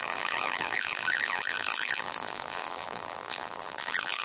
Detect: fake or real fake